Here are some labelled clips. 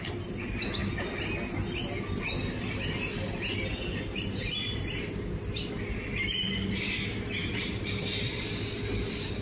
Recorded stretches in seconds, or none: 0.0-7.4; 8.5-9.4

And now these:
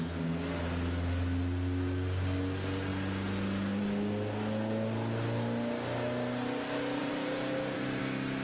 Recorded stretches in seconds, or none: 0.0-7.0; 8.0-8.4

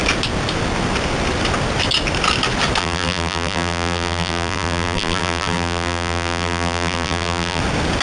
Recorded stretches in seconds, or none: 0.0-2.8; 7.6-8.0

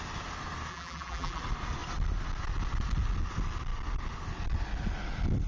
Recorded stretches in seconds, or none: 0.0-0.7; 1.4-5.5

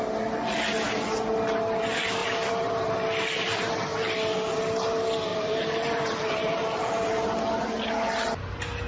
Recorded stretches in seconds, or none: 0.0-2.2; 2.9-5.3; 7.4-8.9

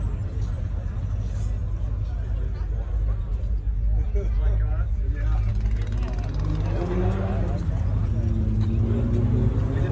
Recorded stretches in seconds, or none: 0.0-9.9

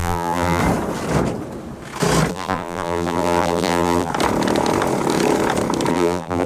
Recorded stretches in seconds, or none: 0.6-2.3; 4.1-5.9

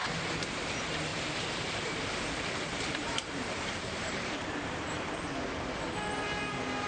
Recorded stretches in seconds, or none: 0.0-1.1; 5.2-6.9